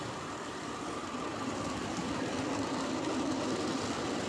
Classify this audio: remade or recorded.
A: remade